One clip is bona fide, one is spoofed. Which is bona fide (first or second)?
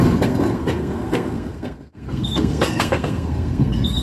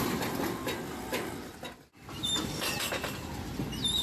second